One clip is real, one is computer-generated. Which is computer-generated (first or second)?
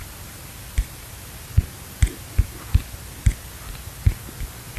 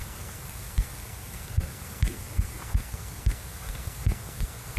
second